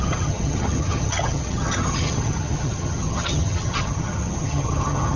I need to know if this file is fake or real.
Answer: fake